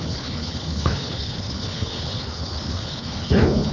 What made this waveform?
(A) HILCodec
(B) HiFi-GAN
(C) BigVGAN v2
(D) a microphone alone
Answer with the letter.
A